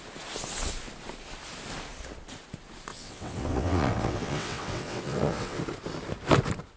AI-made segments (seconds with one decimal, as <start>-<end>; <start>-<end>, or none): 2.9-5.6